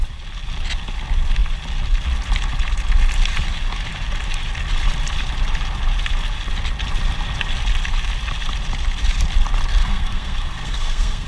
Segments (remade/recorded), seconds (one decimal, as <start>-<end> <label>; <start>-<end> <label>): 0.0-9.8 recorded; 9.8-11.3 remade